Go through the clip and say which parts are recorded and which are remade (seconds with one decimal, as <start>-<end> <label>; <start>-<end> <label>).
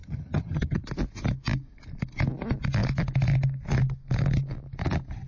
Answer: 0.0-0.8 remade; 0.8-5.3 recorded